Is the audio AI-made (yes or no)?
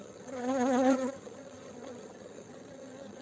yes